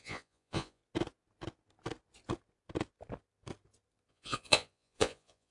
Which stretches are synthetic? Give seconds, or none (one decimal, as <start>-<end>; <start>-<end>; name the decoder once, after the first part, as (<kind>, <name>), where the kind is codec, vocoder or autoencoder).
0.0-0.8 (vocoder, Vocos); 4.1-5.5